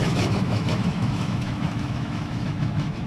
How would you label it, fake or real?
fake